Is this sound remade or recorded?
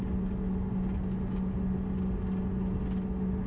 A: recorded